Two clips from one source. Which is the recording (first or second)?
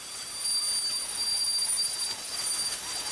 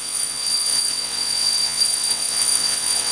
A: first